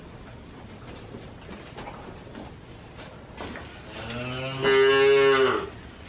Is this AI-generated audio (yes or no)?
no